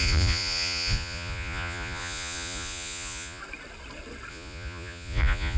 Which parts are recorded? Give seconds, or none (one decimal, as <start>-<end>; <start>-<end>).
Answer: 3.4-4.3

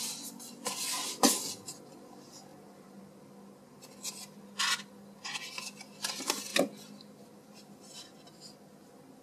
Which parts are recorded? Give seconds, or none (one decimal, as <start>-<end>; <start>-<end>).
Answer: 0.0-9.2